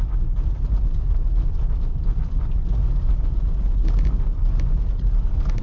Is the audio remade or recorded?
recorded